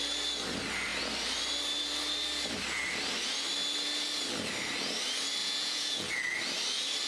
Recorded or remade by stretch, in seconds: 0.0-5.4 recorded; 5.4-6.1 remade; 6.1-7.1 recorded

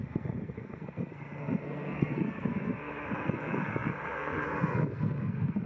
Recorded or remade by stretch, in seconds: 0.0-5.7 remade

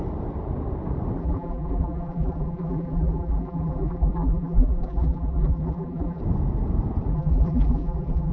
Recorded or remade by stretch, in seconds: 0.0-1.2 recorded; 1.2-6.2 remade; 6.2-7.1 recorded; 7.1-8.3 remade